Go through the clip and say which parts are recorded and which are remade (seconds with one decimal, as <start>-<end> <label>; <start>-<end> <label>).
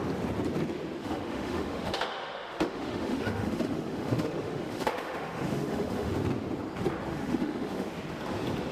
0.0-1.0 recorded; 1.0-6.1 remade; 6.1-7.1 recorded; 7.1-7.9 remade; 7.9-8.7 recorded